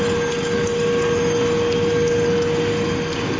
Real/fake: real